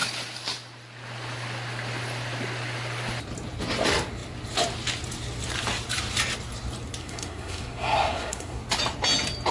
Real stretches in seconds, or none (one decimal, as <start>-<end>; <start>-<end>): 0.0-7.0; 8.6-9.5